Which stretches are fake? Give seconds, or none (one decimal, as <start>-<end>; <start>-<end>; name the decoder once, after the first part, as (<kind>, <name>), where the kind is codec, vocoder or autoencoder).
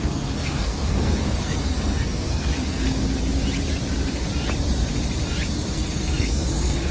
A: 0.0-3.0 (codec, SNAC); 5.7-6.9